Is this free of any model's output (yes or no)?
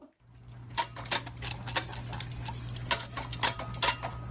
yes